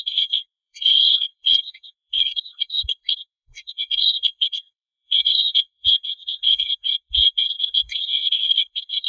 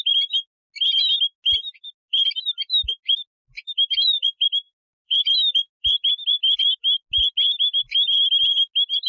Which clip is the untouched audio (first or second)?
second